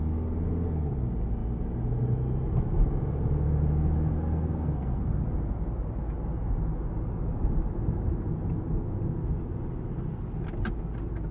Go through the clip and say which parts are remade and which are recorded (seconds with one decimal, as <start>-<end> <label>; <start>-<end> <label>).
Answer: 0.0-4.1 recorded; 4.1-5.2 remade; 5.2-11.3 recorded